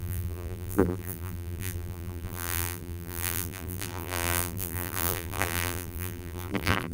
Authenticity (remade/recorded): remade